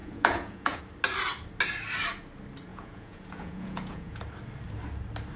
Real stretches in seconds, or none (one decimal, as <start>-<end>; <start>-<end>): 0.8-2.7; 4.2-5.4